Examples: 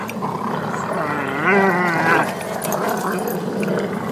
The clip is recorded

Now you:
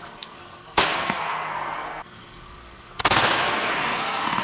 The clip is remade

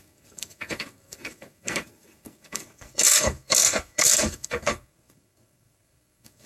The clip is remade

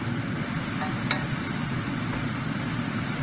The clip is recorded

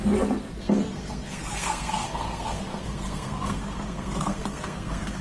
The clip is remade